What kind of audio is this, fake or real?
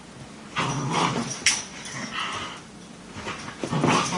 real